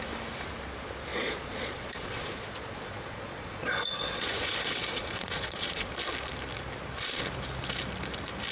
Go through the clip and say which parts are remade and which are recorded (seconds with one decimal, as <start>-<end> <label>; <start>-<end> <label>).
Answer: 0.0-1.1 recorded; 1.1-5.9 remade; 5.9-8.5 recorded